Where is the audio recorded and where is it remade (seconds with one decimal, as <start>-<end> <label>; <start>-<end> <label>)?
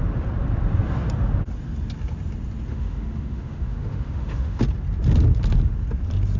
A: 0.0-2.7 recorded; 2.7-4.6 remade; 4.6-6.4 recorded